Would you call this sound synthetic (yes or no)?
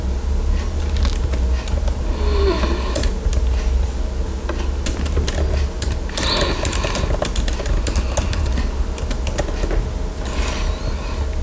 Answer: no